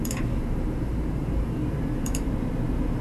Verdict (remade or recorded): remade